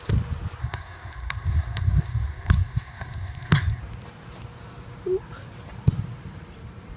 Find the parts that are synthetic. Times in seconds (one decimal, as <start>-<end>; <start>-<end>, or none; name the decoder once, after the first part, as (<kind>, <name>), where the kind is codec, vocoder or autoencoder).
0.6-3.8 (codec, SNAC)